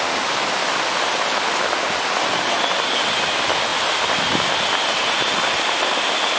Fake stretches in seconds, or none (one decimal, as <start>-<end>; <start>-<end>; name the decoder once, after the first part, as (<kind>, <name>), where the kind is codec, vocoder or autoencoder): 5.0-5.9 (vocoder, BigVGAN v2)